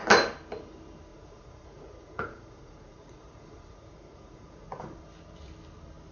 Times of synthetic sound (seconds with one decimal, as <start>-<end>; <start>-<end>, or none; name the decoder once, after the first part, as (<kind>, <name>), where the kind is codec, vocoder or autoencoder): 1.1-4.8 (vocoder, Vocos)